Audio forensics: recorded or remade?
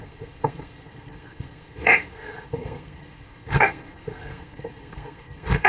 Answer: remade